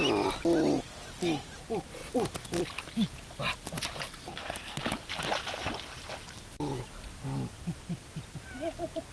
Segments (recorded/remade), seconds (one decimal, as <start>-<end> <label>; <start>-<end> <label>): 0.0-4.3 recorded; 4.3-4.8 remade; 4.8-9.1 recorded